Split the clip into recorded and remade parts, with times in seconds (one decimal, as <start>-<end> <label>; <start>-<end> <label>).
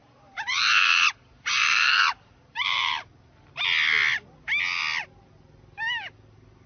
0.0-2.9 remade; 2.9-6.7 recorded